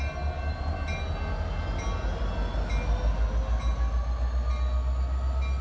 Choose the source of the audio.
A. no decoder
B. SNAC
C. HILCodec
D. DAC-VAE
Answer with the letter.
A